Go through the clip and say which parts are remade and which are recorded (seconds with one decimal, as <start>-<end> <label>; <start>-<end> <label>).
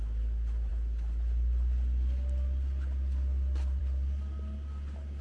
0.0-5.2 recorded